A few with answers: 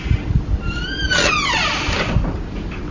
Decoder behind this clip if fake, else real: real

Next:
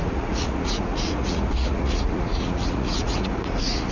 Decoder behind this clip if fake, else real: fake, vocoder, Vocos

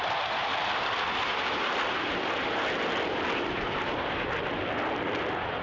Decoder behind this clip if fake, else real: real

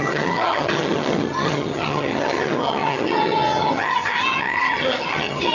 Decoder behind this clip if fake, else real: fake, vocoder, HiFi-GAN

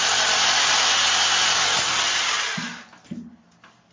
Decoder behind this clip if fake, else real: real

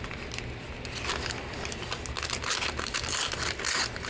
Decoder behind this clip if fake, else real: real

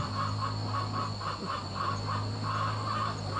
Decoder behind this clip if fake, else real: real